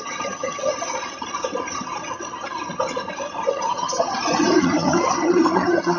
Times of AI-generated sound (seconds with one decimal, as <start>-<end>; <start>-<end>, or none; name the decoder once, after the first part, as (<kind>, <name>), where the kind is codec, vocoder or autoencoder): 0.0-0.7 (vocoder, HiFi-GAN); 3.5-4.1; 4.6-6.0